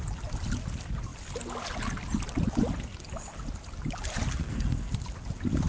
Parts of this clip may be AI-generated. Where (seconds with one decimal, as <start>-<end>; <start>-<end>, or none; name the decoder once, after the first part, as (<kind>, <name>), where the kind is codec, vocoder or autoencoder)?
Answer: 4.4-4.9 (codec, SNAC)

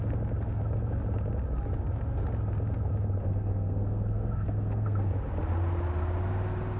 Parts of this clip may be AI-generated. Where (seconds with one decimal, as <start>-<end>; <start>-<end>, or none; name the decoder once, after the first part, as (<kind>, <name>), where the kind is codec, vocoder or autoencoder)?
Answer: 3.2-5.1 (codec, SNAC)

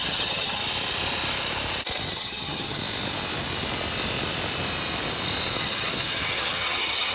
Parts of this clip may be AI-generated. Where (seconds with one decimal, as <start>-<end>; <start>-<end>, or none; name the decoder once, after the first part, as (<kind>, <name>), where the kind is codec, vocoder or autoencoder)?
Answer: 0.0-0.6 (vocoder, HiFi-GAN); 2.1-2.8; 5.6-7.1